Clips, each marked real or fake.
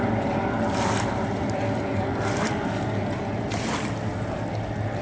real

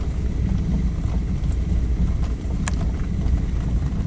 real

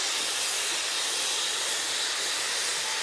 real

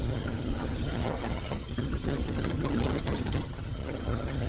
fake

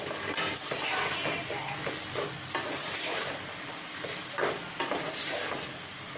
real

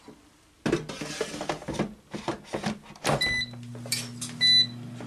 real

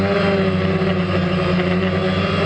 real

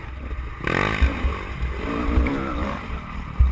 real